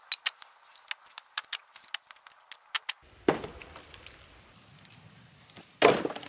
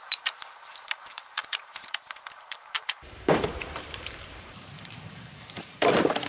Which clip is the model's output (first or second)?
second